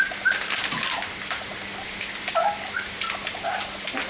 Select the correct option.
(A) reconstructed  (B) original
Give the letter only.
B